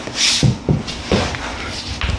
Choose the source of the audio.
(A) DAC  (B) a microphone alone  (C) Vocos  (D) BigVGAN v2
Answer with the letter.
B